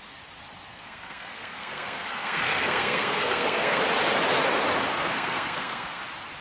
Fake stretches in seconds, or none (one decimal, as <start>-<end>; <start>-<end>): 0.7-3.8; 4.9-6.0